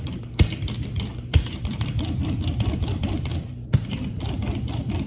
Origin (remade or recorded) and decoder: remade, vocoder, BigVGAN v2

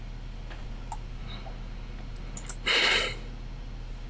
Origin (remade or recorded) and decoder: recorded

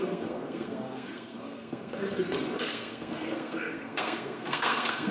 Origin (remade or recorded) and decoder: remade, codec, SNAC